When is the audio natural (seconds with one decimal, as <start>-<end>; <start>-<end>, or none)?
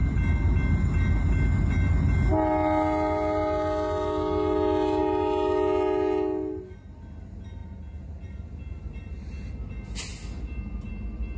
0.0-11.4